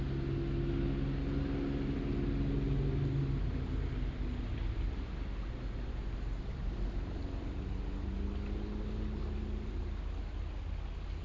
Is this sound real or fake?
real